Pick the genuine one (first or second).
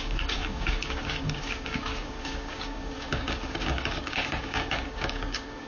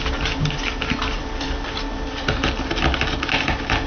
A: second